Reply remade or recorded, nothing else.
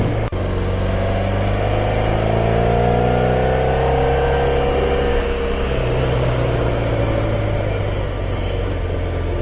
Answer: recorded